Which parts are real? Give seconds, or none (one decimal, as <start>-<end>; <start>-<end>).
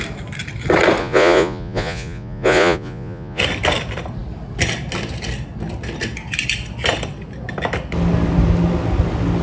0.0-1.0; 3.4-9.4